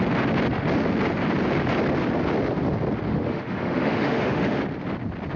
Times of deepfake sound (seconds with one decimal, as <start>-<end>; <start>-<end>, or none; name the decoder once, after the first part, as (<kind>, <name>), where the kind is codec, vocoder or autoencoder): 3.1-4.6 (autoencoder, DAC-VAE)